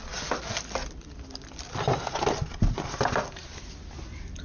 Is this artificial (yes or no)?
no